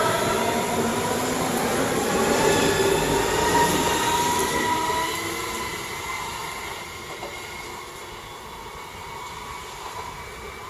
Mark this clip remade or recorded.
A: recorded